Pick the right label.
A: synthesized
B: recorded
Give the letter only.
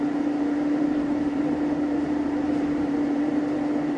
A